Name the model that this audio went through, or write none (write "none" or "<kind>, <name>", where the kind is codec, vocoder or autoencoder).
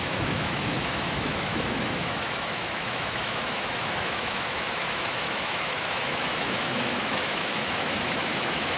autoencoder, DAC-VAE